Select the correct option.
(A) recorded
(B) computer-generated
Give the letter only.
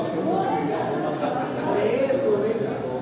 A